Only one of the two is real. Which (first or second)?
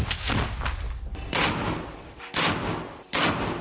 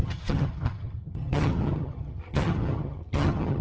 first